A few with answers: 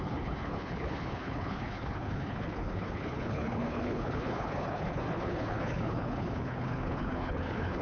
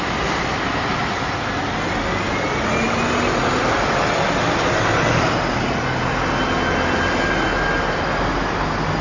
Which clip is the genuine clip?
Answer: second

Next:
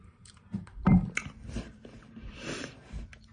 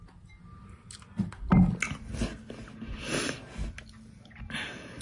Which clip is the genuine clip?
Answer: second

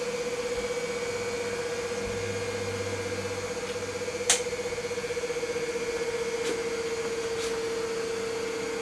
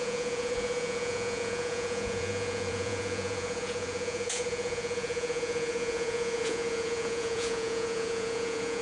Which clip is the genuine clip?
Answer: first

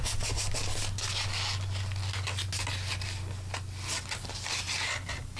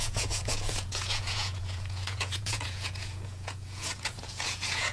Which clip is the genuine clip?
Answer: first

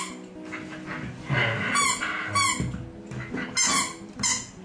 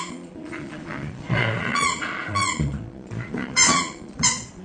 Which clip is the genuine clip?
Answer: first